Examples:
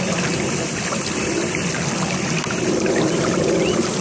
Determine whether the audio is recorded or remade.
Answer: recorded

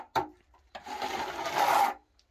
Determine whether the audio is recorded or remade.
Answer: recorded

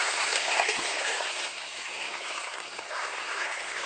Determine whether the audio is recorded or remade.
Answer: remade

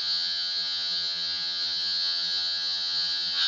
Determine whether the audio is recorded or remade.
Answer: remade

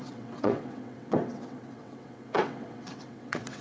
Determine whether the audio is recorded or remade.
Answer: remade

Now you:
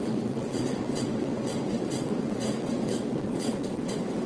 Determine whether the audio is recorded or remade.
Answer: remade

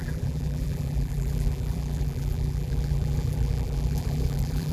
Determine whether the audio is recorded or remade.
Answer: remade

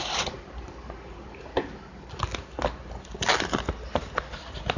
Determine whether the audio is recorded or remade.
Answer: recorded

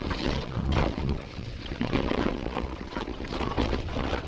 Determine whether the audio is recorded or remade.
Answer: remade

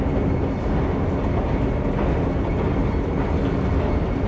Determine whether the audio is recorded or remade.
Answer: recorded